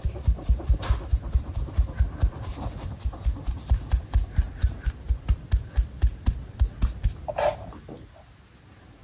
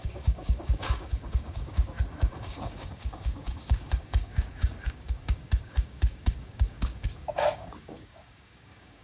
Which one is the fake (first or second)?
second